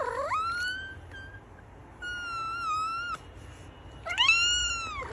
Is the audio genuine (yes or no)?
yes